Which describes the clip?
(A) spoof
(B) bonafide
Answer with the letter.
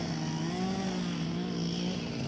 B